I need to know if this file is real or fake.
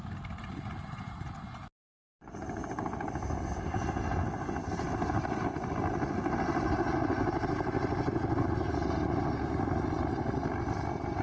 real